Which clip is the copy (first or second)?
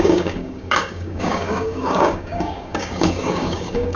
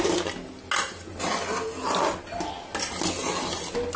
first